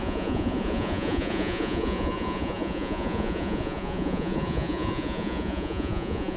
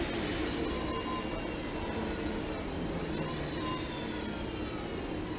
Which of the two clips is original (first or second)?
second